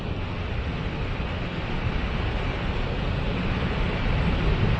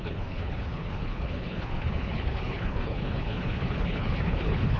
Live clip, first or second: first